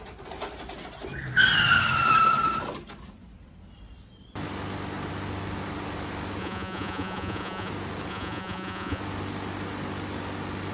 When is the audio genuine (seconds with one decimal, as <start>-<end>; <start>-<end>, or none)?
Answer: 0.0-6.4; 7.7-8.1; 9.0-10.7